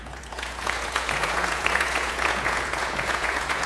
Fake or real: fake